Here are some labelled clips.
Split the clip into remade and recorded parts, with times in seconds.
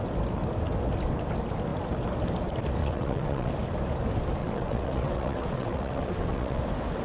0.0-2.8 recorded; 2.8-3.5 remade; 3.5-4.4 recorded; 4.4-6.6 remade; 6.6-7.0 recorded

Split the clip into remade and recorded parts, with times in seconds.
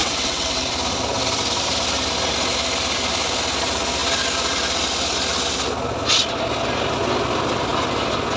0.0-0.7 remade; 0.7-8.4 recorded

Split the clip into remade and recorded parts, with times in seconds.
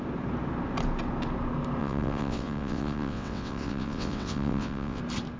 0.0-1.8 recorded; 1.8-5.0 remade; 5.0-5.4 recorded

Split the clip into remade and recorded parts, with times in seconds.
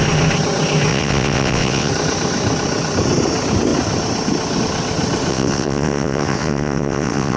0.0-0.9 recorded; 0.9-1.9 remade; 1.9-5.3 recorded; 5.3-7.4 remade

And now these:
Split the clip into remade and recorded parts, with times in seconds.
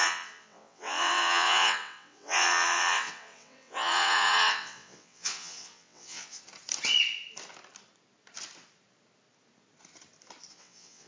0.0-6.4 remade; 6.4-10.5 recorded; 10.5-11.1 remade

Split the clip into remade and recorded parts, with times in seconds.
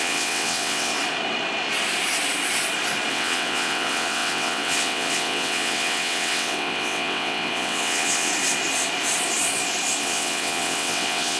0.0-0.9 remade; 0.9-3.1 recorded; 3.1-8.3 remade; 8.3-10.0 recorded; 10.0-11.4 remade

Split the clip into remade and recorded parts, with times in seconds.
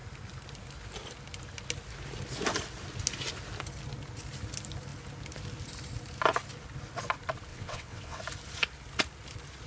0.0-7.5 recorded; 7.5-8.2 remade; 8.2-9.7 recorded